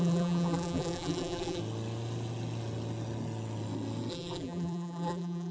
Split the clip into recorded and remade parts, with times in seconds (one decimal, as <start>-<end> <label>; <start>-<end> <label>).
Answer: 0.0-1.6 remade; 1.6-4.1 recorded; 4.1-5.5 remade